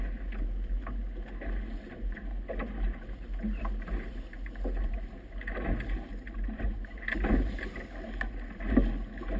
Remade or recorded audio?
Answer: recorded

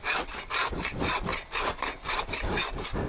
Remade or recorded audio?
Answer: recorded